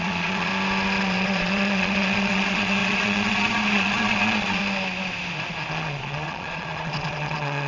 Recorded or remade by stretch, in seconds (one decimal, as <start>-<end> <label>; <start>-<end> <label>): 0.0-0.5 remade; 0.5-1.0 recorded; 1.0-4.6 remade; 4.6-5.7 recorded; 5.7-7.7 remade